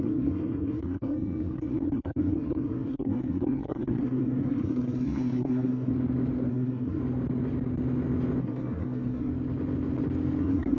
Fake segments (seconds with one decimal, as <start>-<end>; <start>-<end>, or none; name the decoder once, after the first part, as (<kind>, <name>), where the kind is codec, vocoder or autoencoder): 0.0-5.9 (codec, SNAC); 6.5-7.0; 8.4-9.3; 10.4-10.8